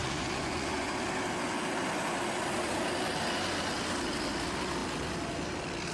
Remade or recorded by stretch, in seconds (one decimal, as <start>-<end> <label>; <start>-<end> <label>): 0.0-0.9 remade; 0.9-5.9 recorded